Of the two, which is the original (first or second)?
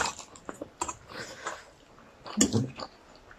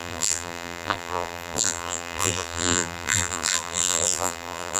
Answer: first